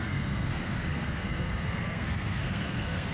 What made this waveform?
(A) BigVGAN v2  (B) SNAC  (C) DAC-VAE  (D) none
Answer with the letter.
B